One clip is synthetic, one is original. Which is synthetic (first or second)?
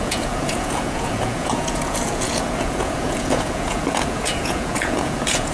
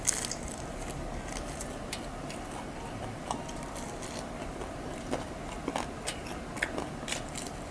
first